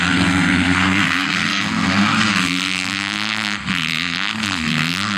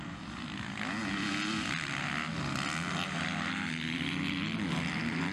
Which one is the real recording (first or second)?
second